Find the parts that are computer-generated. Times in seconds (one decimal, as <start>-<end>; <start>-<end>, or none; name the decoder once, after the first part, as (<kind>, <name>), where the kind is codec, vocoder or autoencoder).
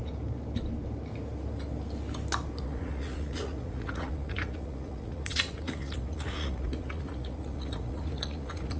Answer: 2.6-8.8 (vocoder, Vocos)